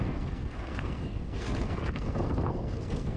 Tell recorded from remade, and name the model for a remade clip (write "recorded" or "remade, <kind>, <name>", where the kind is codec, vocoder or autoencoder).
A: remade, codec, SNAC